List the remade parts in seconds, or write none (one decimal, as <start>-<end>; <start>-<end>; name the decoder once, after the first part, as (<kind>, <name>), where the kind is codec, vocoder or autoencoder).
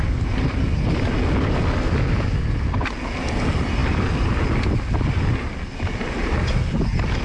none